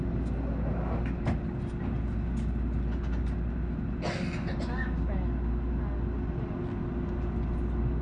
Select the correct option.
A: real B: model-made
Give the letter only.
A